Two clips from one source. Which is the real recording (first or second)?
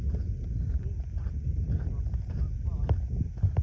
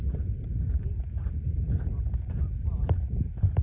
first